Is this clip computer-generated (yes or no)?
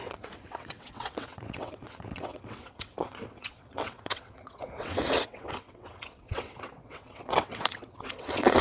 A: yes